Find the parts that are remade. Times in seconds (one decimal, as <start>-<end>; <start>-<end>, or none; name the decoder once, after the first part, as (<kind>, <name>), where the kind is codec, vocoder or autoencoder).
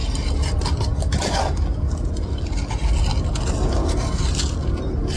none